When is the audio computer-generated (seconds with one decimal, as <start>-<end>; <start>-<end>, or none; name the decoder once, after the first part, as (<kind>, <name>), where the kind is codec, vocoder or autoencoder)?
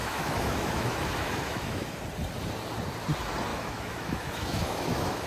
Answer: 0.0-1.9 (autoencoder, DAC-VAE); 3.5-5.3